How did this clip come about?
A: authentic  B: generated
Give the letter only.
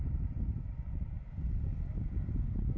A